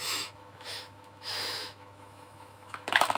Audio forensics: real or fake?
fake